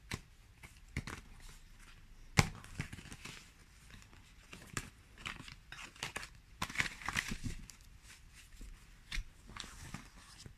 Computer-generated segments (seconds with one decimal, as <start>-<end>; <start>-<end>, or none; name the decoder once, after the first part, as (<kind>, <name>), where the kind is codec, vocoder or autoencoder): 0.5-1.8 (vocoder, BigVGAN v2); 3.6-4.9